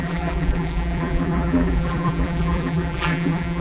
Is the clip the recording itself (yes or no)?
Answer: no